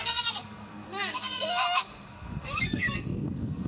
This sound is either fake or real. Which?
fake